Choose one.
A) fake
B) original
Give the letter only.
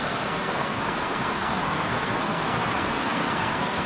A